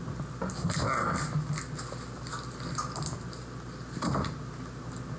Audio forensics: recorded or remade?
recorded